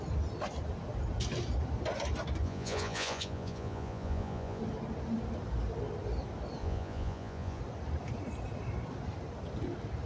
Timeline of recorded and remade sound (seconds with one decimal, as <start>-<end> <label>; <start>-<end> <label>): 0.0-2.4 recorded; 2.4-4.6 remade; 4.6-6.6 recorded; 6.6-7.6 remade; 7.6-10.1 recorded